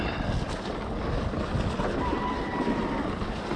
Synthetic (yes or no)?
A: no